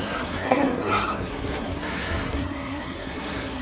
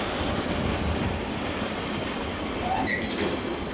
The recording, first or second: second